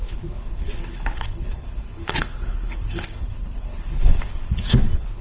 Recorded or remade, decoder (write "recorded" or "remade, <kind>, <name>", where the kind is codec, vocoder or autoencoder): remade, codec, HILCodec